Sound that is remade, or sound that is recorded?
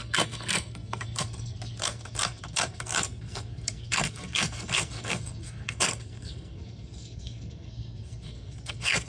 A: remade